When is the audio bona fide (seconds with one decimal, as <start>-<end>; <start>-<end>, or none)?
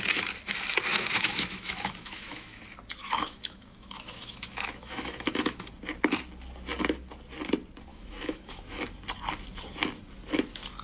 0.0-0.9; 2.6-3.0; 5.7-7.9; 8.8-10.8